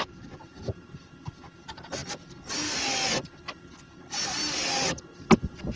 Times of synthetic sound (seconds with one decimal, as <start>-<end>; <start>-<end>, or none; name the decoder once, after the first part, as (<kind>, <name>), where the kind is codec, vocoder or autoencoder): 0.5-1.1 (vocoder, BigVGAN v2)